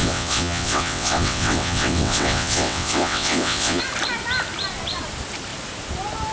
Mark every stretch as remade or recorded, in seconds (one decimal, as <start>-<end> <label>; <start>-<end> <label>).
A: 0.0-3.8 remade; 3.8-6.3 recorded